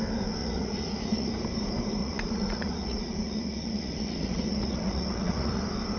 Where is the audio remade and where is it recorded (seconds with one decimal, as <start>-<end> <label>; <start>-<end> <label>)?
0.0-0.4 recorded; 0.4-1.3 remade; 1.3-2.0 recorded; 2.0-5.6 remade; 5.6-6.0 recorded